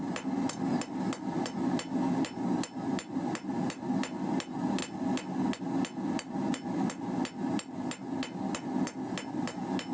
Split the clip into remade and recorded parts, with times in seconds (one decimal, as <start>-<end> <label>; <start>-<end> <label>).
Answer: 0.0-9.9 recorded